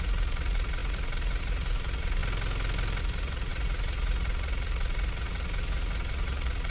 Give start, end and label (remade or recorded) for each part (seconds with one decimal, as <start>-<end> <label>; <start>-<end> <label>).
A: 0.0-2.2 remade; 2.2-3.0 recorded; 3.0-6.7 remade